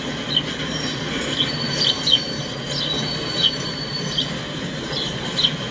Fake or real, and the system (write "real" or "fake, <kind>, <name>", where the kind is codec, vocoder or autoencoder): real